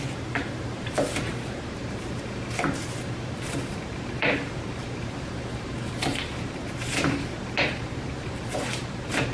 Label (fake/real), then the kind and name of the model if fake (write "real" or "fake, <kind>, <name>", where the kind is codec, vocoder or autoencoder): fake, vocoder, BigVGAN v2